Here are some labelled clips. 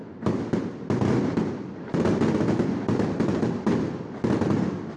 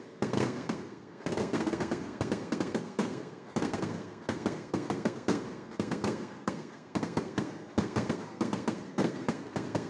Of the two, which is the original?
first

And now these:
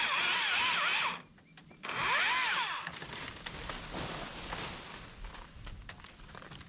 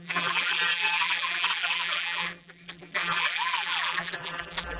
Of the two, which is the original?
first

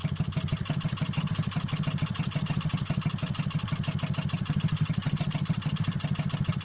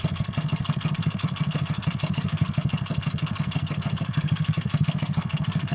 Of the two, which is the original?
first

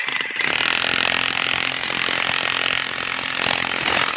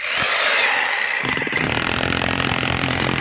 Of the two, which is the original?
first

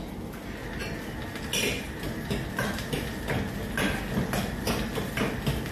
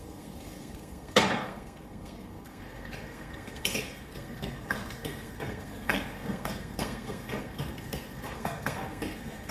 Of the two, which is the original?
first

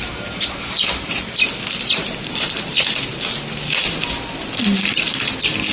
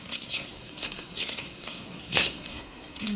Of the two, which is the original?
first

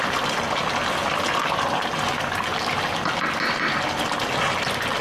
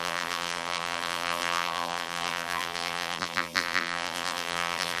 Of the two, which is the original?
first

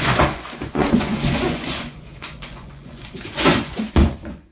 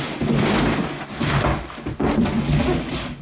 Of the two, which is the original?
second